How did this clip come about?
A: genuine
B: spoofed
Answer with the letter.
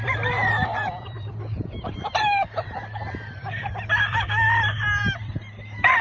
B